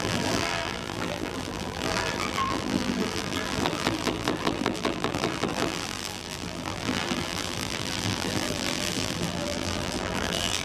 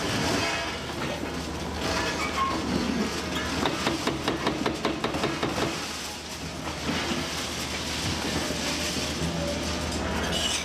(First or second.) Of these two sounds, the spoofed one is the first